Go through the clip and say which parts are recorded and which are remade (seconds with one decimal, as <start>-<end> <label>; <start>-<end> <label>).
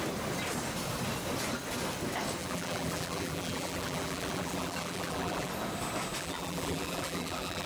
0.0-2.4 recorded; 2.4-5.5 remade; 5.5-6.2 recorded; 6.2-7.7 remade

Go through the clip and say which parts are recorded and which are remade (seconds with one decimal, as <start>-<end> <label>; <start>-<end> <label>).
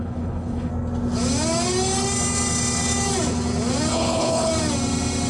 0.0-0.7 remade; 0.7-3.9 recorded; 3.9-4.5 remade; 4.5-5.3 recorded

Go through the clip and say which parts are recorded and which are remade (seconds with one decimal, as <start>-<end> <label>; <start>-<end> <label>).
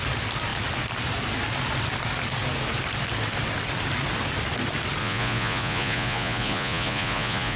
0.0-5.0 recorded; 5.0-7.6 remade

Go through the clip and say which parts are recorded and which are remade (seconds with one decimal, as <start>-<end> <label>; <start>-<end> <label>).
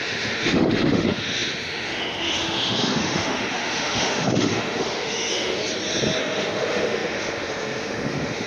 0.0-5.6 remade; 5.6-6.2 recorded; 6.2-8.5 remade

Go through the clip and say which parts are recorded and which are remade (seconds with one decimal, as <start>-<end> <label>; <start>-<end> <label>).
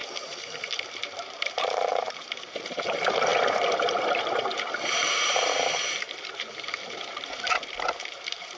0.0-8.6 remade